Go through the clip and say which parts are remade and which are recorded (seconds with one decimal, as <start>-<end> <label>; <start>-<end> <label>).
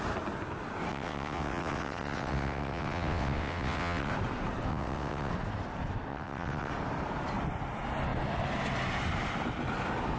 0.0-0.9 recorded; 0.9-4.1 remade; 4.1-4.7 recorded; 4.7-5.3 remade; 5.3-6.1 recorded; 6.1-6.7 remade; 6.7-10.2 recorded